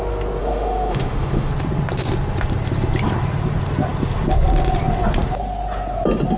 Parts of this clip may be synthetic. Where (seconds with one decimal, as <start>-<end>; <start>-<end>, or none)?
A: 0.4-1.5